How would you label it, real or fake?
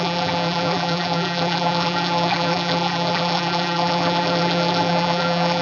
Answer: fake